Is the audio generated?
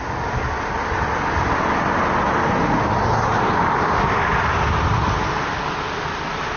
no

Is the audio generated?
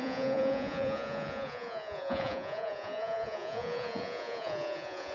yes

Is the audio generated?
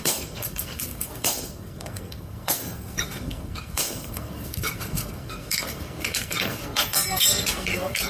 yes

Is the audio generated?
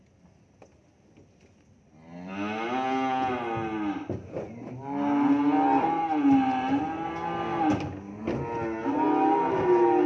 no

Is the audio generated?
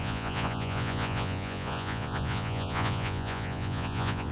yes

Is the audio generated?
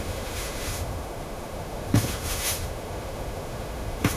yes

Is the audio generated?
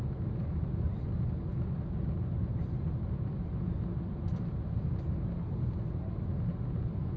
no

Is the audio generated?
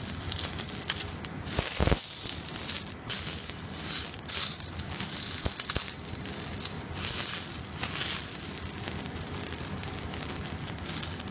no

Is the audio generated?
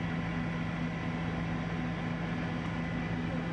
no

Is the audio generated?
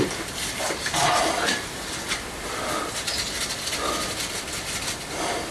no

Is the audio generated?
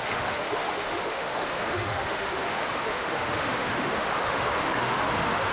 yes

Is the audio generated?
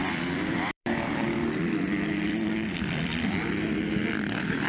yes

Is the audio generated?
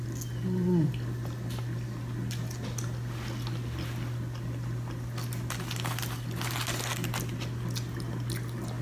no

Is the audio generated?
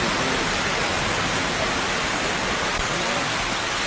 no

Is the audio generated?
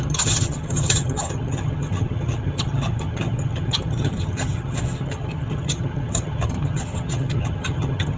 yes